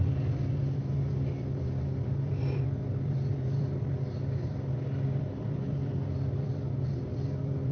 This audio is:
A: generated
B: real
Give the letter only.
A